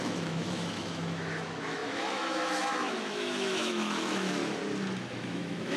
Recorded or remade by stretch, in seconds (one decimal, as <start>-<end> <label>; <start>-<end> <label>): 0.0-4.4 remade; 4.4-5.1 recorded; 5.1-5.8 remade